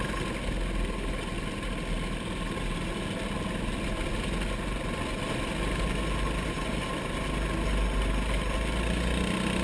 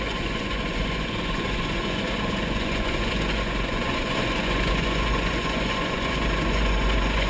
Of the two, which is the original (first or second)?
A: first